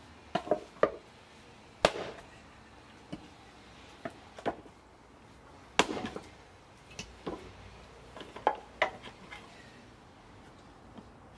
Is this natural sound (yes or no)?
yes